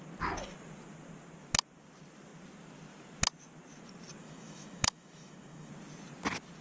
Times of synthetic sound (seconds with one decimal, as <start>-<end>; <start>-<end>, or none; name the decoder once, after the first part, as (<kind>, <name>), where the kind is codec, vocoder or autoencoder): 4.2-5.7 (autoencoder, DAC-VAE)